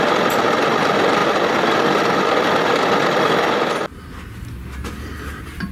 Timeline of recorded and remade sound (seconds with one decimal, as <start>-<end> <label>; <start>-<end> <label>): 0.0-5.7 recorded